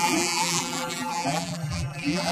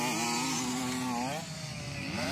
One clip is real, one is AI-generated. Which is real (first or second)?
second